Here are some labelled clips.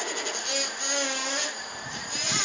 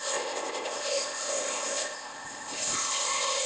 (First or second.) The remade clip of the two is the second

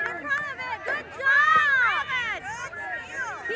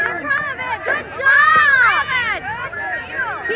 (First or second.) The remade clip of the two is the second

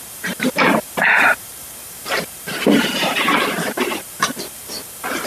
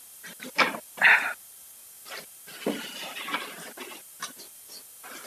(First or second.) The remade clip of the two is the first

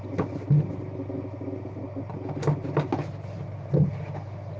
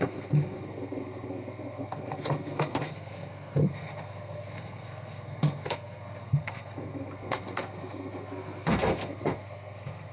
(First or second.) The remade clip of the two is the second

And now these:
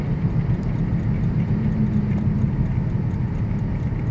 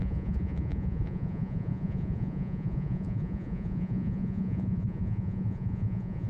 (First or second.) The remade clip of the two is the second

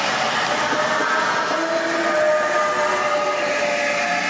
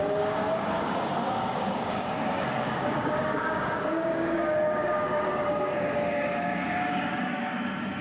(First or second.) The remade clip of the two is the second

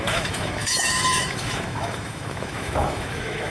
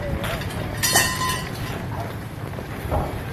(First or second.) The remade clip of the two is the first